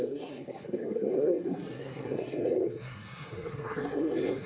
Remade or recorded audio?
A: remade